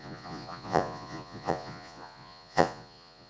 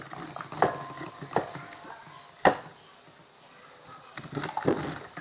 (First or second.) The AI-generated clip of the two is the first